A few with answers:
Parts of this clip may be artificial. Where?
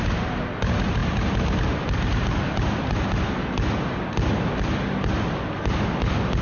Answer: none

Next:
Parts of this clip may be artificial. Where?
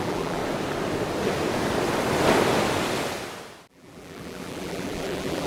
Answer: 0.0-0.4; 3.7-5.5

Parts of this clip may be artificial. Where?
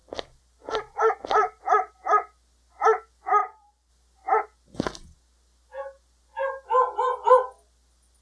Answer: 0.0-1.6; 3.4-3.9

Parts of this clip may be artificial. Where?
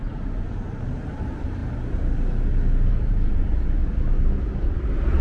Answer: 0.0-1.6; 2.9-3.8; 4.6-5.2